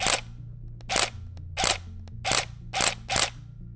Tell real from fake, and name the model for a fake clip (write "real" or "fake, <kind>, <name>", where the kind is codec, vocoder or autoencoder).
real